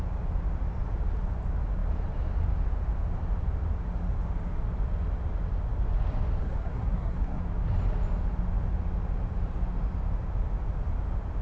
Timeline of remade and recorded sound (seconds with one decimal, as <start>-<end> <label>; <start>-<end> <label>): 0.0-6.4 recorded; 6.4-7.4 remade; 7.4-11.4 recorded